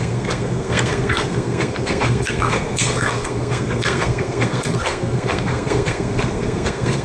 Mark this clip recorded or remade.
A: remade